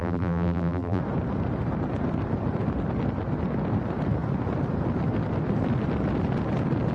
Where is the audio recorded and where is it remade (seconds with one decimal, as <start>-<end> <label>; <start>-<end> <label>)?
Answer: 0.0-1.0 remade; 1.0-6.9 recorded